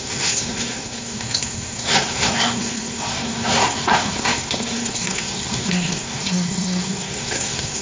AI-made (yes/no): yes